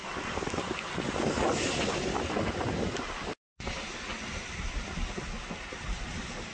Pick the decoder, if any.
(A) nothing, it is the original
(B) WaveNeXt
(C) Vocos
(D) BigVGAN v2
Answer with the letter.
A